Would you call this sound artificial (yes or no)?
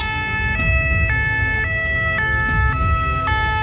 no